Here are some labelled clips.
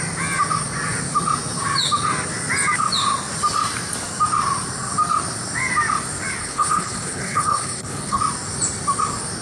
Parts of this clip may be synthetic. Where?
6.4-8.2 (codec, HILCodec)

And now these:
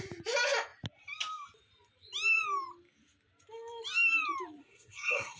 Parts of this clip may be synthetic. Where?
4.6-5.4 (codec, SNAC)

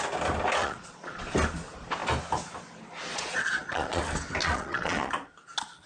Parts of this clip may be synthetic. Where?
0.6-1.3 (vocoder, Vocos); 3.1-4.0; 4.4-5.1

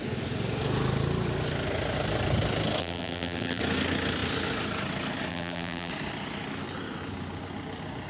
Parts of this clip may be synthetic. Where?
2.8-3.6 (vocoder, BigVGAN v2); 5.3-5.9

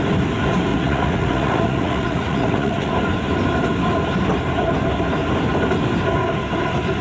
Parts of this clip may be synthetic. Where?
0.7-2.9 (vocoder, Vocos)

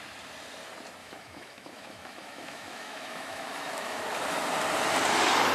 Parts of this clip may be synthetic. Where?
1.0-4.0 (autoencoder, DAC-VAE)

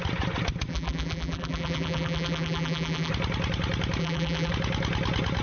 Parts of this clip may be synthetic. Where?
0.7-3.1 (vocoder, BigVGAN v2); 4.0-4.5

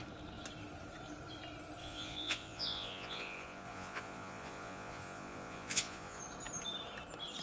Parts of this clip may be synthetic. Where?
1.8-6.2 (vocoder, Vocos)